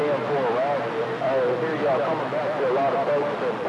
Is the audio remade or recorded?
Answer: recorded